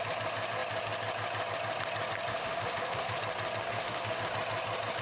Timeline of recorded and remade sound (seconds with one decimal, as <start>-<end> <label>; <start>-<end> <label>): 0.0-2.3 recorded; 2.3-3.2 remade; 3.2-3.7 recorded; 3.7-4.2 remade; 4.2-5.0 recorded